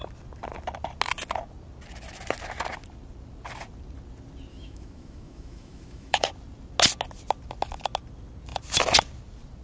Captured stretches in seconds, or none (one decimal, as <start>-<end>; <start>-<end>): 0.0-4.5; 6.3-9.6